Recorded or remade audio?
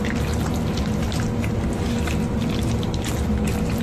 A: recorded